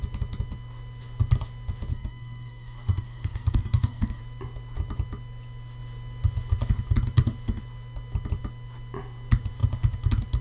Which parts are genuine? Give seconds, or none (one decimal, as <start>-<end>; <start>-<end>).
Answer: 0.0-1.9; 4.2-10.4